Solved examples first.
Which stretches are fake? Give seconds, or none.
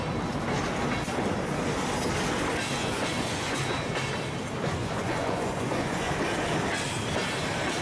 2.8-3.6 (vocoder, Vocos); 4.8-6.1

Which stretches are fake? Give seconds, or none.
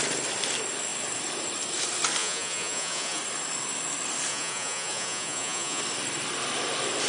2.2-3.2 (vocoder, Vocos); 4.3-5.8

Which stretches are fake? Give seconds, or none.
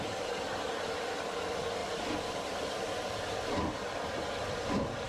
1.8-5.1 (vocoder, BigVGAN v2)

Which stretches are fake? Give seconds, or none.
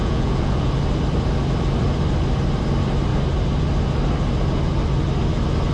0.0-0.7 (vocoder, Vocos)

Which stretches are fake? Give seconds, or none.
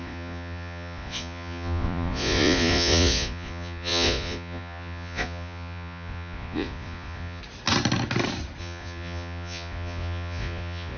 0.0-7.4 (vocoder, Vocos); 8.6-11.0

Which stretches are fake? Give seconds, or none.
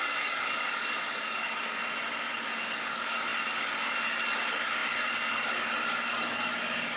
0.0-1.8 (codec, DAC); 2.3-7.0